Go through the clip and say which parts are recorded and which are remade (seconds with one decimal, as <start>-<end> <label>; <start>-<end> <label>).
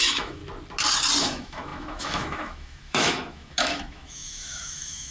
0.0-0.4 remade; 0.4-1.2 recorded; 1.2-5.1 remade